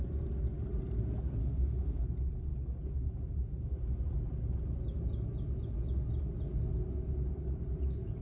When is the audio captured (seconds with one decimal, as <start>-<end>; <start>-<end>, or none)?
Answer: 0.0-1.4; 2.0-8.2